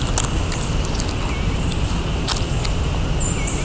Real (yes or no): yes